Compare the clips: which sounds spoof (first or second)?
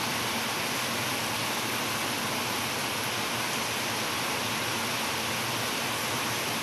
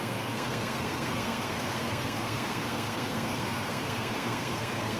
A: second